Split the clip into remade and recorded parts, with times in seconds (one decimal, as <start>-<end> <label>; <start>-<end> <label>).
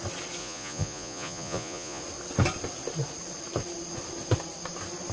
0.0-0.4 recorded; 0.4-2.0 remade; 2.0-5.1 recorded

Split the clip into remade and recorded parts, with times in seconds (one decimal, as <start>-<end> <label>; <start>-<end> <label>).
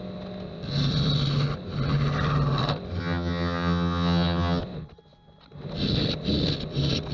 0.0-3.0 recorded; 3.0-4.6 remade; 4.6-7.1 recorded